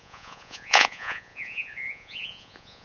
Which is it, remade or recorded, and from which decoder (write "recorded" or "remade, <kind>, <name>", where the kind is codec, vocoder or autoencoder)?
remade, vocoder, Vocos